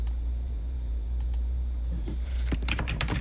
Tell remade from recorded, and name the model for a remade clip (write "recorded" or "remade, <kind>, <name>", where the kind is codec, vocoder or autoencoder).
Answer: remade, vocoder, BigVGAN v2